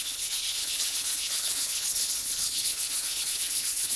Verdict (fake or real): fake